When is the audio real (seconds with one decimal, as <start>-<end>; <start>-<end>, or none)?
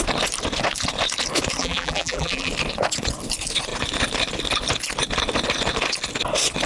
0.0-1.6; 2.5-6.7